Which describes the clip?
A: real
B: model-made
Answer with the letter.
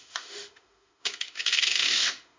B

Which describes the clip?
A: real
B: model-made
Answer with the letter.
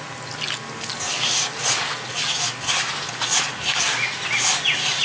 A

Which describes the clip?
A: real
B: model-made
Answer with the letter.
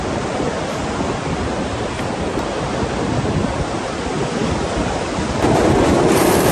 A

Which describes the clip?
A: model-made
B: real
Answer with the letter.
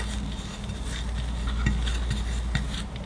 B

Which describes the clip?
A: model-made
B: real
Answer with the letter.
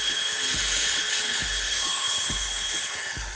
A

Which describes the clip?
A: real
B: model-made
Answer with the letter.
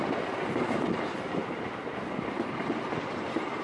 B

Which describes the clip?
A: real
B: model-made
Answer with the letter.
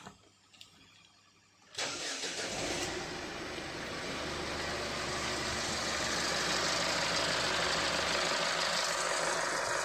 A